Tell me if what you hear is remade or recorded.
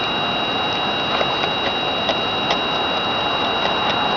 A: recorded